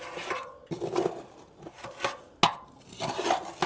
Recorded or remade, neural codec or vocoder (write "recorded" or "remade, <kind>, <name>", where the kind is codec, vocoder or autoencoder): recorded